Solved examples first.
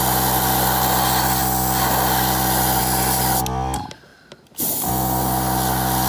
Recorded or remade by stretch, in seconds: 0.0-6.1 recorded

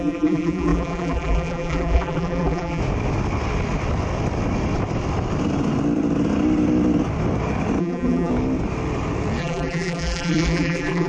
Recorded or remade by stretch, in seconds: 0.0-2.8 remade; 2.8-7.8 recorded; 7.8-8.3 remade; 8.3-9.4 recorded; 9.4-11.1 remade